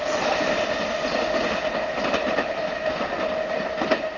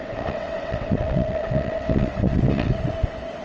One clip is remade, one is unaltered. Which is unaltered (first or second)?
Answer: first